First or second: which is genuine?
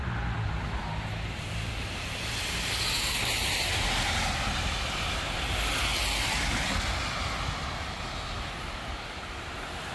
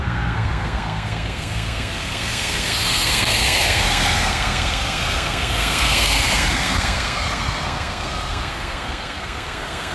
first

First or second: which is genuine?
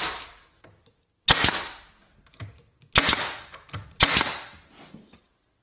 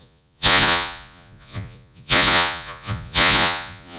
first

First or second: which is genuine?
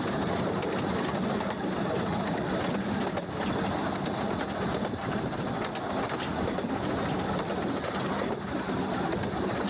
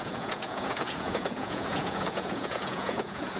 first